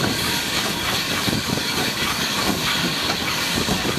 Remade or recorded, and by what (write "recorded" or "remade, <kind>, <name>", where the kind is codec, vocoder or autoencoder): remade, codec, DAC